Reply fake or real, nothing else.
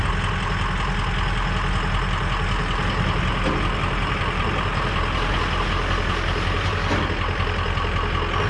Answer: real